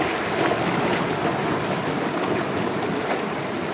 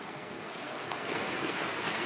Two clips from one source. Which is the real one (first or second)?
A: first